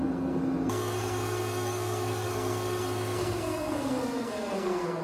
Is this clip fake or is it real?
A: fake